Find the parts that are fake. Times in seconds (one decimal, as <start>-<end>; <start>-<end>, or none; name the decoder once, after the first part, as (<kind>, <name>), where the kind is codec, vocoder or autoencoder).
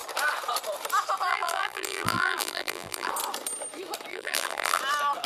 1.3-3.1 (vocoder, BigVGAN v2); 4.1-4.8